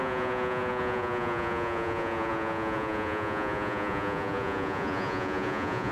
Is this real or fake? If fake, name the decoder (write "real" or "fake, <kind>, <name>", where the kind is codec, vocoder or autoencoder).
fake, vocoder, Vocos